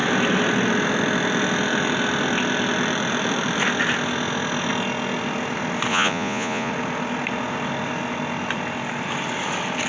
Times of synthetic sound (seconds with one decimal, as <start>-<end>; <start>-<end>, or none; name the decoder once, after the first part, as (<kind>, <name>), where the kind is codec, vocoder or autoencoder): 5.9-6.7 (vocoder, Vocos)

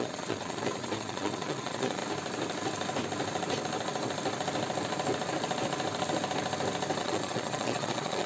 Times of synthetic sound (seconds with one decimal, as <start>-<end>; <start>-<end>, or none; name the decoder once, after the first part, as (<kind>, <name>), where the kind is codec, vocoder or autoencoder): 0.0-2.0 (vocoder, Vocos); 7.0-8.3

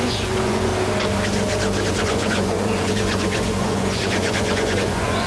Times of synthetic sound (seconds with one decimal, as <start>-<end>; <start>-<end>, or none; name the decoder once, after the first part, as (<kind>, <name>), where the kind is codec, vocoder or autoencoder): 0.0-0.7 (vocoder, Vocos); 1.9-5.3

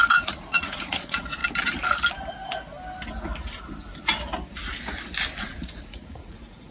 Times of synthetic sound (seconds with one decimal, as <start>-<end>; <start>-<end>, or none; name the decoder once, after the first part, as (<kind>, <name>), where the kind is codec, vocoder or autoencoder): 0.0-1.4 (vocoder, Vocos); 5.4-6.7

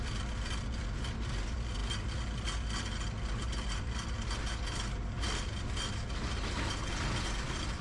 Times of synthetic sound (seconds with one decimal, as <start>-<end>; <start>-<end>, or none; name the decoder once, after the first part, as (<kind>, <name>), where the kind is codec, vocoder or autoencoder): none